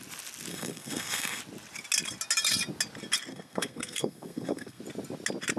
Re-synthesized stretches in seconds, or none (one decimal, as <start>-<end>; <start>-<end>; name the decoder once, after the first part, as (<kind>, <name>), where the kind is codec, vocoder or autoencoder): 0.5-1.4 (codec, SNAC); 3.3-4.8